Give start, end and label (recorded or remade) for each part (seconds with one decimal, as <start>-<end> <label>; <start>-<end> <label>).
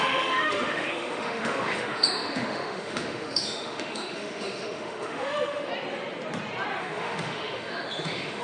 0.0-5.7 remade; 5.7-6.8 recorded; 6.8-8.4 remade